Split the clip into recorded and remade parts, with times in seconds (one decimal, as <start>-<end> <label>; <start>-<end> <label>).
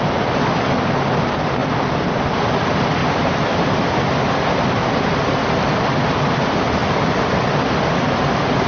0.0-8.7 recorded